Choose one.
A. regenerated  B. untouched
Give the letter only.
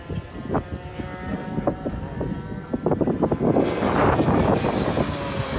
B